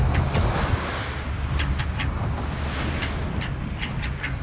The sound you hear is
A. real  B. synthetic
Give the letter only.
A